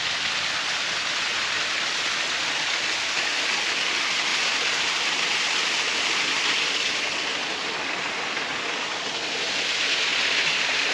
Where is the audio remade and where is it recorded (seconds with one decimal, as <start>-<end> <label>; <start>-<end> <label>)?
0.0-8.5 recorded; 8.5-9.4 remade; 9.4-10.9 recorded